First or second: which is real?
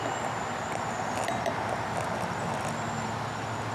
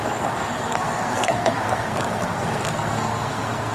first